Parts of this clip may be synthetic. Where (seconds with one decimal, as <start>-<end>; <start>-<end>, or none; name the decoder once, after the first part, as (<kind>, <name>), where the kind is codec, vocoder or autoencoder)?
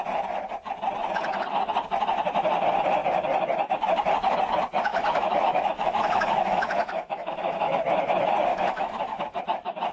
4.9-7.8 (autoencoder, DAC-VAE); 8.5-9.4